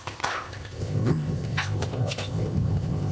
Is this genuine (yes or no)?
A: no